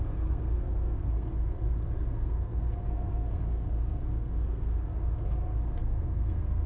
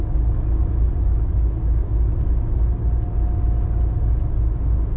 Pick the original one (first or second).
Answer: second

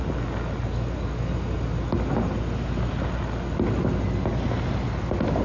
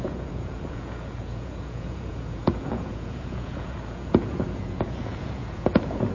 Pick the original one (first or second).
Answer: first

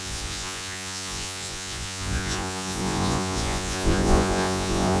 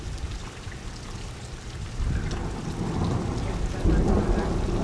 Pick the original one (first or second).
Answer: second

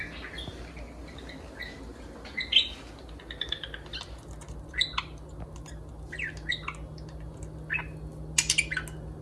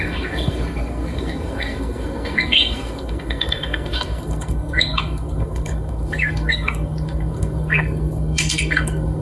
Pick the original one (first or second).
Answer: first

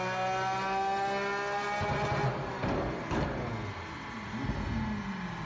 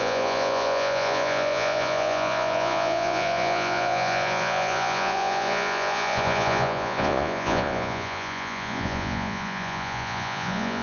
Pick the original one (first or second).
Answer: first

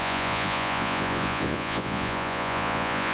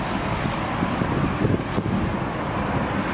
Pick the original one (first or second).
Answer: second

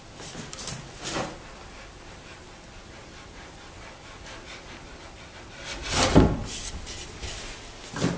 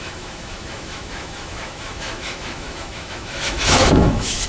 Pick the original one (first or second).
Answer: first